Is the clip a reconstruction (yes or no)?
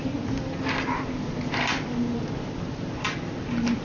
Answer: no